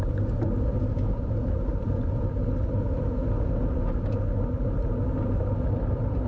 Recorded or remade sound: recorded